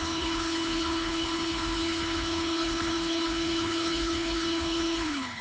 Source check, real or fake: fake